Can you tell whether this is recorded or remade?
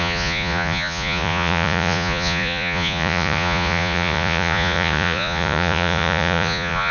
remade